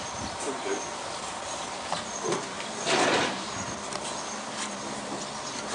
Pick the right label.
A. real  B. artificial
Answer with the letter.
B